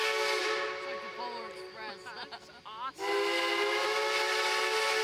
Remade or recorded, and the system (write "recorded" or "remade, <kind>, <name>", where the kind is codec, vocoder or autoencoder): recorded